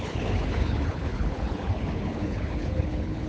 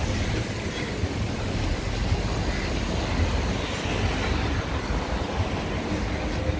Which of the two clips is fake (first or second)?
first